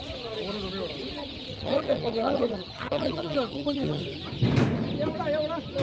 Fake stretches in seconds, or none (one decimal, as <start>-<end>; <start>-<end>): 1.5-4.0